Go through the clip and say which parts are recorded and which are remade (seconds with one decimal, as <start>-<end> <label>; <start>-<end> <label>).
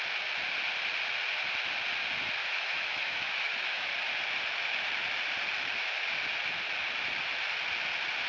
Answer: 0.0-2.4 recorded; 2.4-3.9 remade; 3.9-8.3 recorded